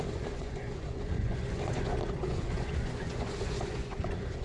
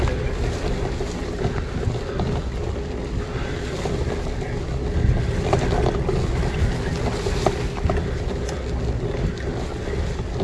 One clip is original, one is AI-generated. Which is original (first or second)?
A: second